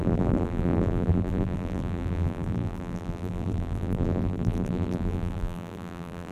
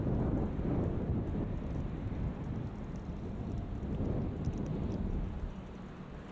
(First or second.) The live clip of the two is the second